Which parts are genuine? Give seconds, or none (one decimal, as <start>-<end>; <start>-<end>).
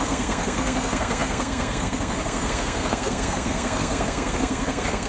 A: none